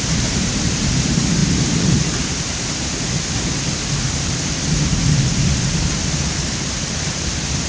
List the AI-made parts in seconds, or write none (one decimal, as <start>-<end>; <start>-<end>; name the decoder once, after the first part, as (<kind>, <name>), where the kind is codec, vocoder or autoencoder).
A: 0.0-7.7 (vocoder, BigVGAN v2)